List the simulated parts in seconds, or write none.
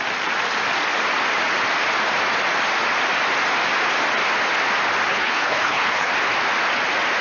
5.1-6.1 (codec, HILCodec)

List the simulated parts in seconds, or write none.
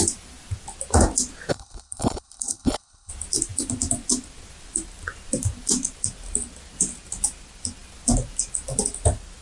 1.5-3.1 (codec, HILCodec)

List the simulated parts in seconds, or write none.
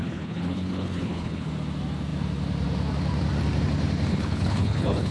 0.0-1.5 (codec, HILCodec); 4.1-5.1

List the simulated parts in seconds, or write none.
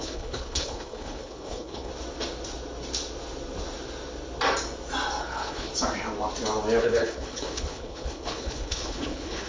0.0-1.9 (codec, HILCodec); 5.2-5.7; 6.8-9.5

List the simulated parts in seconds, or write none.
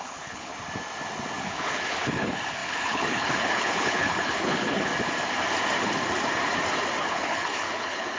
0.0-0.5 (codec, HILCodec); 1.4-4.9; 7.0-8.2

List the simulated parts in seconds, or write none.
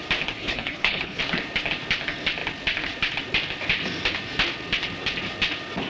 0.4-1.2 (codec, HILCodec)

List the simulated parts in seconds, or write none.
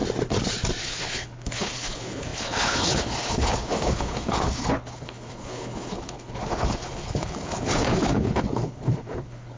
0.8-9.6 (codec, HILCodec)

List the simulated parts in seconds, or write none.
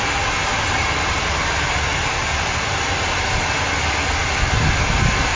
none